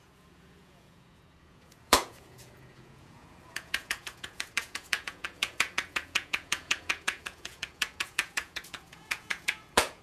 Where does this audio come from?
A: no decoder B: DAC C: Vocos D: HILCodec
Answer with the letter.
C